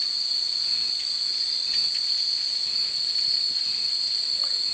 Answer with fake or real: real